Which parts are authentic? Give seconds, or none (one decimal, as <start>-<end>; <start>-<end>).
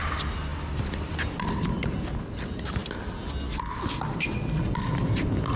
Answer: 0.0-5.6